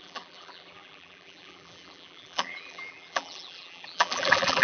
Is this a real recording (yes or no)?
no